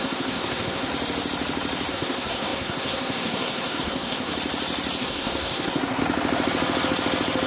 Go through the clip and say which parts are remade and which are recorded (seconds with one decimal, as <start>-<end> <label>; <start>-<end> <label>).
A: 0.0-0.9 remade; 0.9-1.9 recorded; 1.9-4.3 remade; 4.3-5.0 recorded; 5.0-6.0 remade; 6.0-7.5 recorded